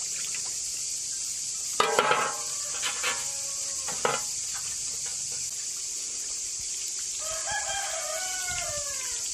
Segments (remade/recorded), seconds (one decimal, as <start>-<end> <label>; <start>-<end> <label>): 0.0-1.2 recorded; 1.2-2.0 remade; 2.0-7.4 recorded; 7.4-7.9 remade; 7.9-9.3 recorded